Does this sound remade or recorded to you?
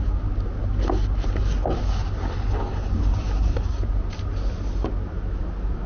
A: recorded